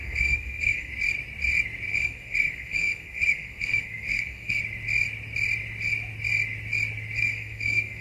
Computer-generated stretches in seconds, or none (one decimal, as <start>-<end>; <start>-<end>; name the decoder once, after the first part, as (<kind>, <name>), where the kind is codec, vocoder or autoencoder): 0.0-0.9 (codec, SNAC); 1.9-4.6; 7.2-8.0

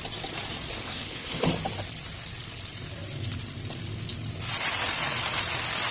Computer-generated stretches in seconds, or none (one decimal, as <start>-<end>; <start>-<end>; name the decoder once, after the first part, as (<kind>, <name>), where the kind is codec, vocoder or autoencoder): 0.8-1.5 (codec, HILCodec)

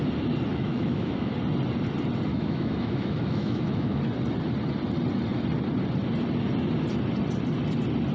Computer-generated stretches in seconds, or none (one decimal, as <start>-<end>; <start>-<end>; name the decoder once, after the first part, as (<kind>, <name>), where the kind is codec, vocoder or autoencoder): 0.5-1.3 (autoencoder, DAC-VAE); 2.3-4.0

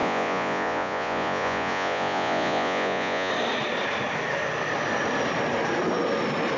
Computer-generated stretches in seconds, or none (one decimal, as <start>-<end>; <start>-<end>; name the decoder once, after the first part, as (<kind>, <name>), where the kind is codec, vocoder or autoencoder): 0.0-3.3 (vocoder, Vocos)

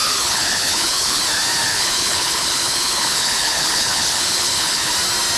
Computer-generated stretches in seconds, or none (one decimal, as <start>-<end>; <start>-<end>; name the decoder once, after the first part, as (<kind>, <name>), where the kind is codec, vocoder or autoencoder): 0.0-1.2 (codec, HILCodec); 1.7-4.9